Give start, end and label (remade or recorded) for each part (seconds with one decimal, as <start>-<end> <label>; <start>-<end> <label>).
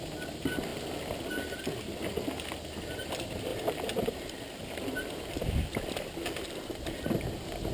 0.0-3.5 recorded; 3.5-6.9 remade; 6.9-7.7 recorded